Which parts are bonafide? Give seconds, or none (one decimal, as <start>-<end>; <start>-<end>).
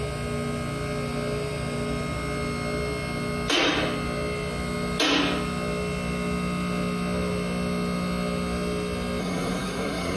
0.0-9.2